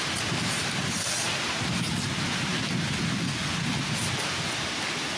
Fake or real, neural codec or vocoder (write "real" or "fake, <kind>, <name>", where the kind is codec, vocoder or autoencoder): real